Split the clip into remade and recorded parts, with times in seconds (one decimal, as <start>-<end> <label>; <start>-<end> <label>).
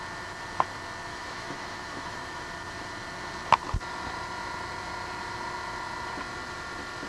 0.0-1.1 recorded; 1.1-2.4 remade; 2.4-7.1 recorded